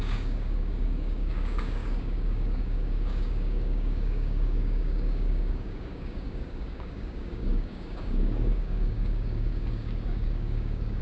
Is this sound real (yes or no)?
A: no